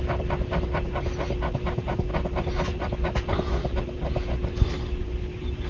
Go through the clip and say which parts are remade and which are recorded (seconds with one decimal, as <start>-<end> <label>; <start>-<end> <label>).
0.0-5.7 recorded